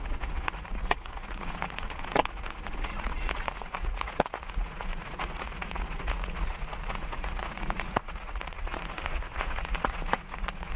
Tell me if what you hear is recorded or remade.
remade